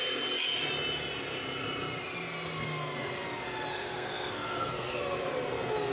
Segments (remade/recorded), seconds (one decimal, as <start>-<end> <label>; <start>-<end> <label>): 0.0-3.7 recorded; 3.7-5.0 remade; 5.0-5.9 recorded